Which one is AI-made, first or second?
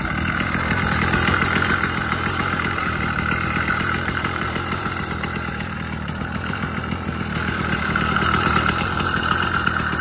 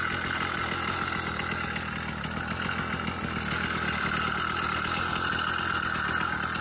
first